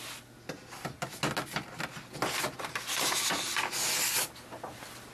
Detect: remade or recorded recorded